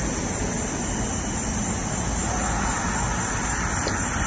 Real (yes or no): yes